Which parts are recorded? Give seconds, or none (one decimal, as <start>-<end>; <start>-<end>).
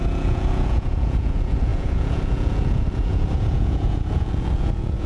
none